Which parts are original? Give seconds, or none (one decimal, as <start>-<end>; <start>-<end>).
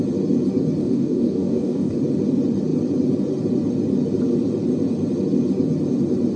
0.0-0.8; 2.0-6.4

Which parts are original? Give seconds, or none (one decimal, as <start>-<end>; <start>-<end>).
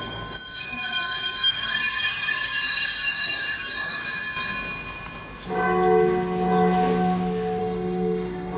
4.0-7.6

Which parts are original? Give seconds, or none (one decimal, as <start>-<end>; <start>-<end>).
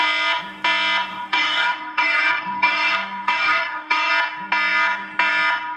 0.0-1.1; 4.1-5.8